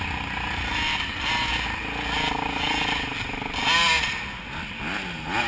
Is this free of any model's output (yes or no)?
yes